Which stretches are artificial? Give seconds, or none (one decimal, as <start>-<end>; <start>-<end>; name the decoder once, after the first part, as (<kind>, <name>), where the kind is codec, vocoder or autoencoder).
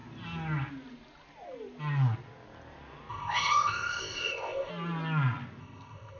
3.1-4.7 (codec, ZipCodec); 5.6-6.2